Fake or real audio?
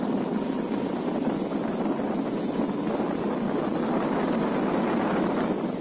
real